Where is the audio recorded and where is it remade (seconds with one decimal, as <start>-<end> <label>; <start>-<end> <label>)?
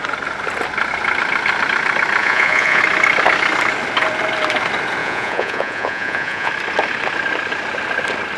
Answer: 0.0-2.2 recorded; 2.2-2.8 remade; 2.8-5.0 recorded; 5.0-6.5 remade; 6.5-8.4 recorded